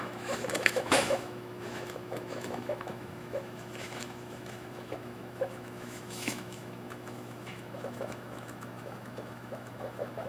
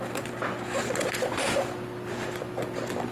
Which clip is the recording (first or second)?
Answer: second